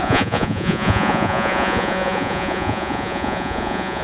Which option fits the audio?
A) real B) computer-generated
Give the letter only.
B